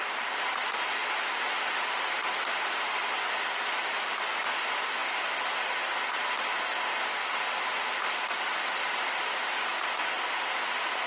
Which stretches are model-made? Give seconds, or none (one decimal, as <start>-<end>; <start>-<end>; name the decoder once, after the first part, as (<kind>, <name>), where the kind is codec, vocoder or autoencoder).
0.0-9.7 (vocoder, BigVGAN v2); 10.6-11.1